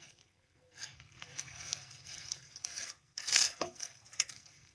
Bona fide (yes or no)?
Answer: no